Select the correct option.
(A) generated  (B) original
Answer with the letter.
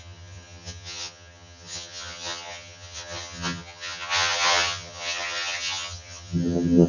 A